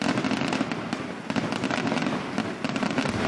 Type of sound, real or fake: real